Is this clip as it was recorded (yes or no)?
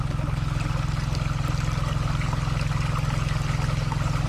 yes